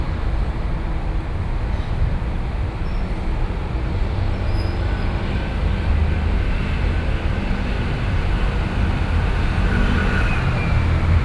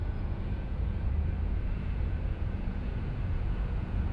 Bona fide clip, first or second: first